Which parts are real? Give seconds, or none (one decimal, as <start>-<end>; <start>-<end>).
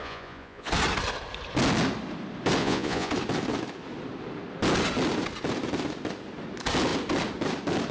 0.7-2.6; 3.1-7.9